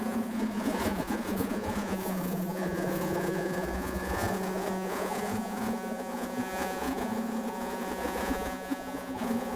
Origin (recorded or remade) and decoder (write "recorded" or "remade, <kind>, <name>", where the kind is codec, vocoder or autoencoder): remade, vocoder, Vocos